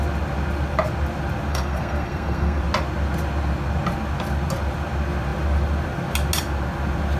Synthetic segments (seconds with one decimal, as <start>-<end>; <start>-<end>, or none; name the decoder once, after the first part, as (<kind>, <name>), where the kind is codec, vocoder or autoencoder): 1.5-2.6 (codec, SNAC)